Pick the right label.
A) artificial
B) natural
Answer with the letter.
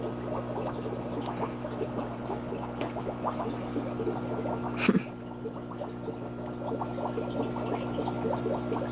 B